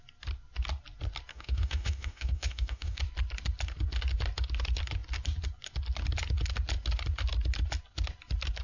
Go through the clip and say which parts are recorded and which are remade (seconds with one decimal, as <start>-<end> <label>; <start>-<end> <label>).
0.0-1.3 recorded; 1.3-3.0 remade; 3.0-8.6 recorded